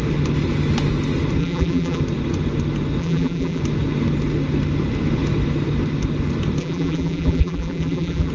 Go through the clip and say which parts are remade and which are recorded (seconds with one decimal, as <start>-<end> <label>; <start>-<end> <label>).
0.0-1.4 recorded; 1.4-2.0 remade; 2.0-3.0 recorded; 3.0-3.6 remade; 3.6-6.6 recorded; 6.6-8.3 remade

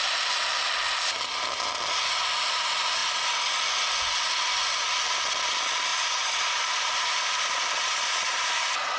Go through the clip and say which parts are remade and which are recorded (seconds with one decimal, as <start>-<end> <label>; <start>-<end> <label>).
0.0-5.9 recorded; 5.9-9.0 remade

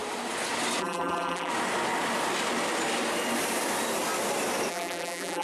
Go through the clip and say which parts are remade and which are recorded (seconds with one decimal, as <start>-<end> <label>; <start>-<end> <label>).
0.0-0.8 recorded; 0.8-1.5 remade; 1.5-4.7 recorded; 4.7-5.4 remade